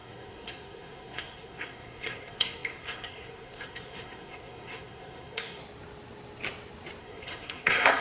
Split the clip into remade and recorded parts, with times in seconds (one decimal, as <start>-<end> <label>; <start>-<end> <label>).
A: 0.0-5.6 remade; 5.6-7.0 recorded; 7.0-8.0 remade